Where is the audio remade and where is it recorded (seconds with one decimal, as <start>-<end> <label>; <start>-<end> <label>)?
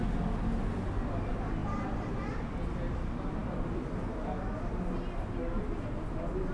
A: 0.0-6.5 recorded